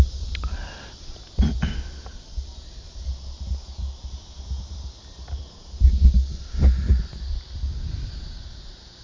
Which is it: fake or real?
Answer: real